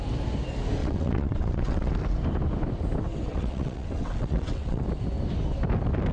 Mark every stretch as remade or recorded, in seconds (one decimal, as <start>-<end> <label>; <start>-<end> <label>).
0.0-0.8 recorded; 0.8-1.9 remade; 1.9-3.3 recorded; 3.3-4.8 remade; 4.8-6.1 recorded